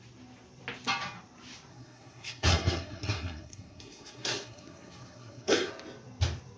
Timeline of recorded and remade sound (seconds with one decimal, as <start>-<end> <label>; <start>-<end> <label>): 0.0-1.7 recorded; 1.7-5.7 remade; 5.7-6.6 recorded